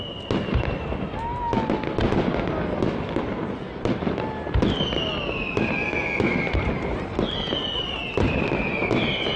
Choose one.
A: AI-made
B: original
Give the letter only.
B